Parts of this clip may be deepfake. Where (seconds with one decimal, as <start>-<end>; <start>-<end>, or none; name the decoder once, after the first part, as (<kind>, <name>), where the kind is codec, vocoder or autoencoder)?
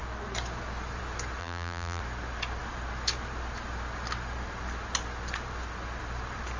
1.4-2.0 (vocoder, BigVGAN v2)